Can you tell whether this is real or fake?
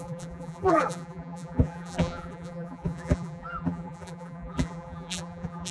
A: fake